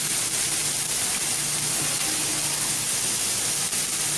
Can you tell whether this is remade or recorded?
recorded